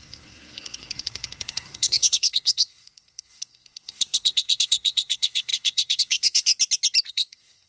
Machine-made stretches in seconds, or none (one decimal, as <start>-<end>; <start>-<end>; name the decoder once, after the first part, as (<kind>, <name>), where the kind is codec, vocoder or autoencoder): 0.0-6.5 (codec, SNAC); 7.1-7.7

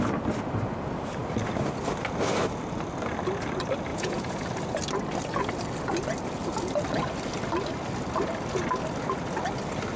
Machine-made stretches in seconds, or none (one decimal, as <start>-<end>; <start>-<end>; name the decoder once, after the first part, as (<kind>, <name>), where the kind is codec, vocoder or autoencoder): 3.9-4.4 (vocoder, Vocos)

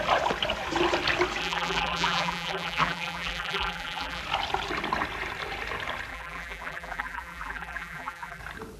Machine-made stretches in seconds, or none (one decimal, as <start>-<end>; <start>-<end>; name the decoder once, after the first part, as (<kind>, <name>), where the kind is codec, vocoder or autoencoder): 1.4-4.2 (vocoder, BigVGAN v2); 6.1-8.4

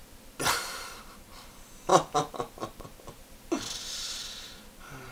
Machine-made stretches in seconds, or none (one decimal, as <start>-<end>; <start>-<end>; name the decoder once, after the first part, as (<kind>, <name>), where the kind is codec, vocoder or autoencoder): 0.5-1.9 (vocoder, BigVGAN v2)

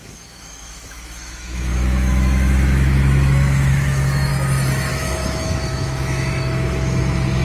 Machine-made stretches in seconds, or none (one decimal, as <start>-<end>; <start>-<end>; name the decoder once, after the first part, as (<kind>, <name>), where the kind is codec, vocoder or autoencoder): 0.0-4.3 (autoencoder, DAC-VAE); 4.9-7.4

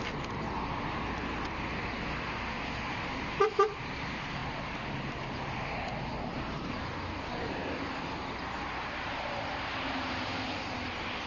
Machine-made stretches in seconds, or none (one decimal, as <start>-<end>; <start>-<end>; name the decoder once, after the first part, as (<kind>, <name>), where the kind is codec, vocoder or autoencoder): none